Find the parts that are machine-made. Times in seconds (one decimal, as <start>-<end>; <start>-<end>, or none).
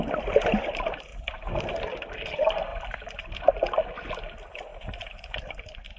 1.1-1.7; 2.7-3.5